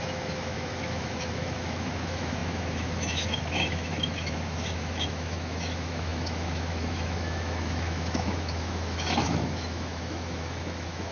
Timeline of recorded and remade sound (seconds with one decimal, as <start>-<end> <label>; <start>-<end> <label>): 0.0-11.1 remade